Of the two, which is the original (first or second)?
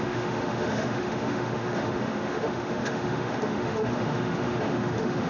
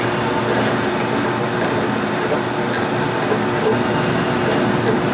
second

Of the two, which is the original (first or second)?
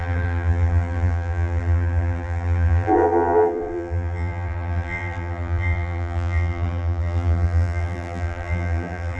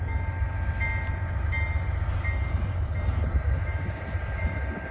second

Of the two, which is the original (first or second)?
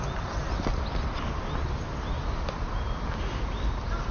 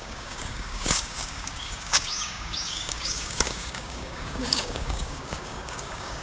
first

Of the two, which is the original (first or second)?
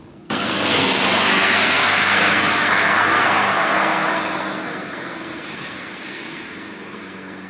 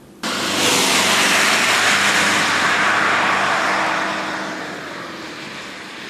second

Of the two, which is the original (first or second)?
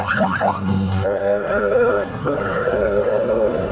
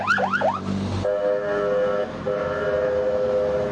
second